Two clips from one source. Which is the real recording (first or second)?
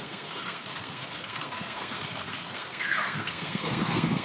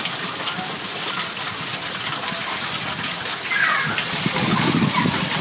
second